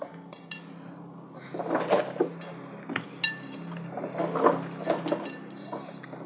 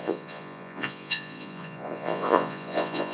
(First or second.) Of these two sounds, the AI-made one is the second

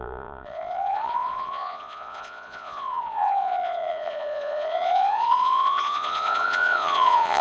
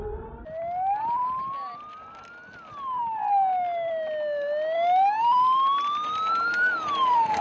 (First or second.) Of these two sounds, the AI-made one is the first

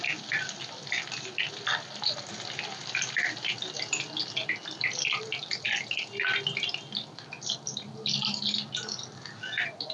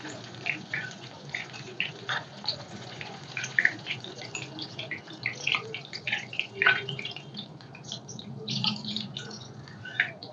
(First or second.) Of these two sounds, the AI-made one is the second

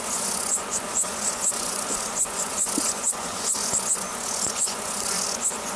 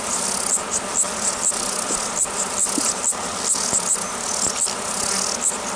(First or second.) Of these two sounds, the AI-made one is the first